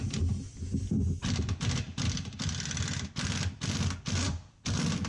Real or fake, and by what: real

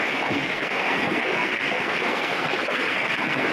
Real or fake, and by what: fake, codec, SNAC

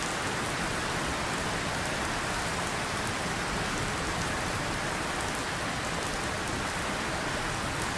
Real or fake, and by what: real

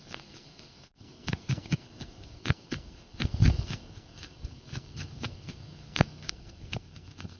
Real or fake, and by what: fake, codec, SNAC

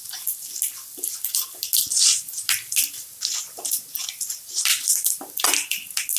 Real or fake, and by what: real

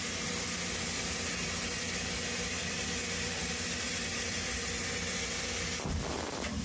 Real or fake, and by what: real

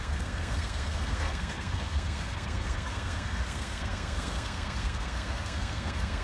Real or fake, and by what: fake, codec, SNAC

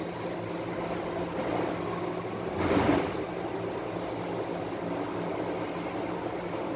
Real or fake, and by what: real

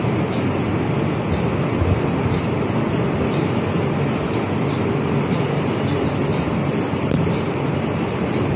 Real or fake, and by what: real